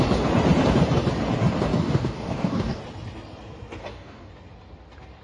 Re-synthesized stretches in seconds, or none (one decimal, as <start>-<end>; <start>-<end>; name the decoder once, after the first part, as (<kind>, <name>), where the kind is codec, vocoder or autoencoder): 1.7-2.8 (codec, DAC); 3.8-4.3